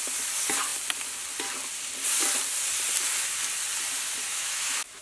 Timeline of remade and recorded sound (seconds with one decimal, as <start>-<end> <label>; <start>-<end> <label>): 0.0-4.3 recorded; 4.3-5.0 remade